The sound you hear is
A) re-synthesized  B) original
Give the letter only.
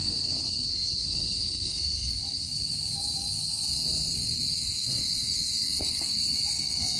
A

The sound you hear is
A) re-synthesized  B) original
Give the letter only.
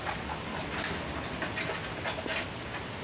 B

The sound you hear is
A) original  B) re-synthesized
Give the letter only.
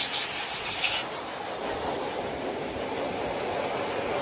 A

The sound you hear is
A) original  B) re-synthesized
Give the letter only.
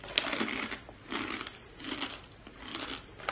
A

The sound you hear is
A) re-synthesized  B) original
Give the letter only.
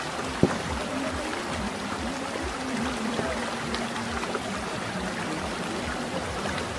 B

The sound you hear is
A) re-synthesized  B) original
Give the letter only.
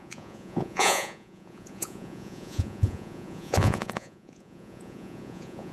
A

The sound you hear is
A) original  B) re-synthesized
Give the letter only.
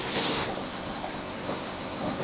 B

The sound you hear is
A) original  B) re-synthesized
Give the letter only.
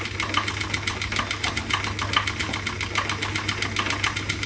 A